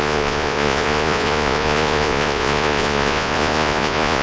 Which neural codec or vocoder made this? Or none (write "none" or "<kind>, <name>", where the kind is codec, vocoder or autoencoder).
vocoder, Vocos